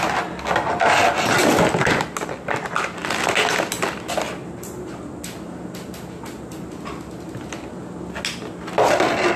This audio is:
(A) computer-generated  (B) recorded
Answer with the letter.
B